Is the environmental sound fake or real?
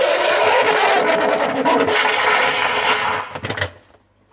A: real